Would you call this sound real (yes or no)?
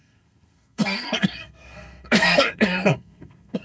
no